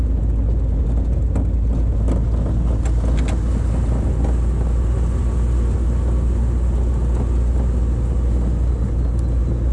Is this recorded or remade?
recorded